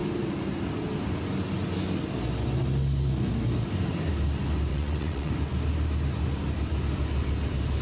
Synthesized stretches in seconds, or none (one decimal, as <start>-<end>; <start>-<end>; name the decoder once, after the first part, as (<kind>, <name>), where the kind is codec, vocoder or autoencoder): 4.7-5.3 (vocoder, WaveNeXt)